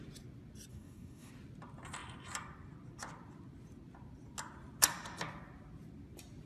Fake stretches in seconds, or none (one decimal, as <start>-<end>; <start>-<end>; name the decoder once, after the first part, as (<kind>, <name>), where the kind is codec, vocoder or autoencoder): 0.7-1.3 (codec, DAC)